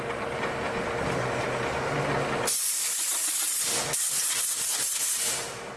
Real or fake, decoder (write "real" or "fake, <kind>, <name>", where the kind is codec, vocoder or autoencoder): real